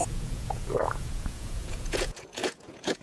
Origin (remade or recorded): remade